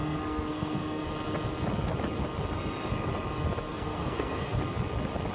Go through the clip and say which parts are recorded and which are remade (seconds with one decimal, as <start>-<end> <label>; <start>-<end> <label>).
0.0-1.1 remade; 1.1-3.7 recorded; 3.7-4.6 remade; 4.6-5.3 recorded